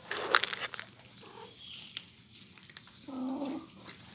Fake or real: real